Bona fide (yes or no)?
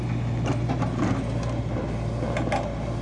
yes